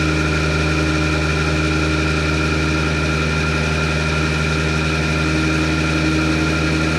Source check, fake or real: real